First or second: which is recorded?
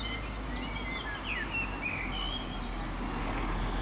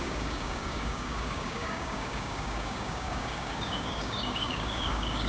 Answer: first